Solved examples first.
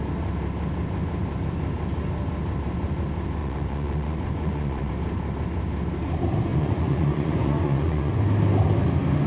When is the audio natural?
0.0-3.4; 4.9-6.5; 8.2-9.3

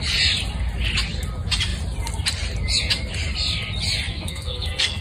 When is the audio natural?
0.0-4.1

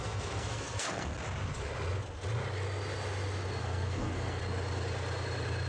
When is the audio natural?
1.1-3.6; 4.4-5.7

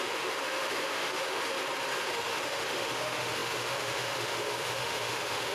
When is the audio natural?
1.6-2.1

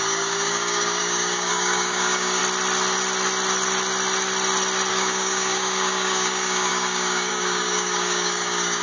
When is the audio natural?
2.4-4.9

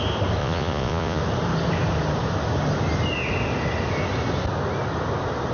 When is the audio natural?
0.0-0.4; 1.2-5.5

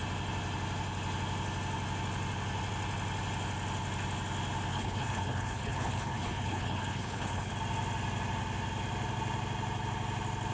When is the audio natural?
0.0-4.7; 7.5-10.5

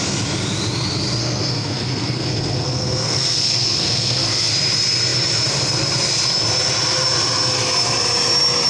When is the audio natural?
0.0-1.2; 4.5-8.7